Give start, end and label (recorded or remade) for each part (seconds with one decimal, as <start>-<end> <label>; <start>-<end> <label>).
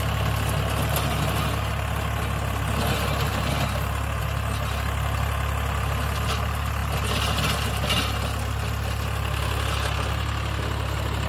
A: 0.0-11.3 recorded